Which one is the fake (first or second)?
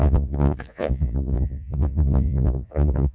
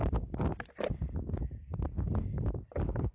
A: first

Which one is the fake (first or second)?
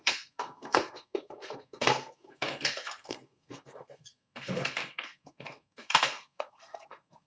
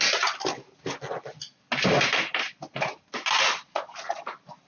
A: first